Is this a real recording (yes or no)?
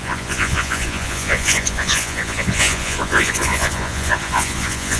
no